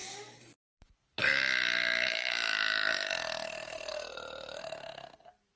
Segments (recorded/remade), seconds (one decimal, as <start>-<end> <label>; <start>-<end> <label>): 0.0-1.3 remade; 1.3-3.9 recorded; 3.9-4.6 remade; 4.6-5.6 recorded